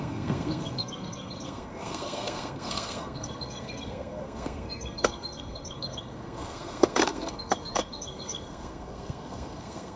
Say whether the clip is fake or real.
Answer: fake